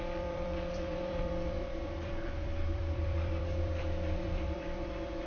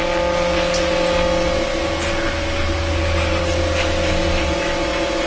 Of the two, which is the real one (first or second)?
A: second